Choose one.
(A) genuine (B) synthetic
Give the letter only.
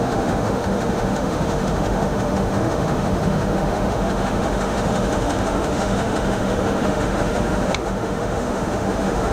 B